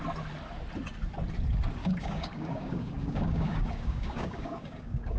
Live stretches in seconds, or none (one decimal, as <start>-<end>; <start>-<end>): 0.0-1.8